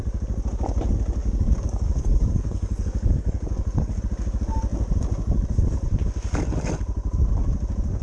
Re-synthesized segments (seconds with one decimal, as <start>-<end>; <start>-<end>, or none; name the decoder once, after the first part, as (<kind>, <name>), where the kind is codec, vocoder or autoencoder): 1.2-4.0 (codec, DAC)